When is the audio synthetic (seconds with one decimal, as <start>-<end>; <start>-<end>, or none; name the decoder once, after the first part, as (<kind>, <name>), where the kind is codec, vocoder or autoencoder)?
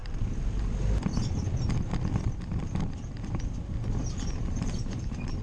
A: 0.0-1.0 (vocoder, BigVGAN v2); 4.0-5.4